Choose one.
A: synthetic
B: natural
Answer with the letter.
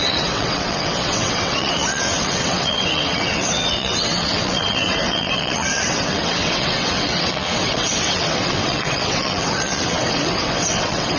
A